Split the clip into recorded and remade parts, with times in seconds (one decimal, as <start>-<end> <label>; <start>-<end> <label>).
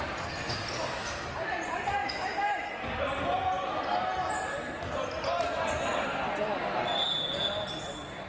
0.0-2.0 recorded; 2.0-2.7 remade; 2.7-8.3 recorded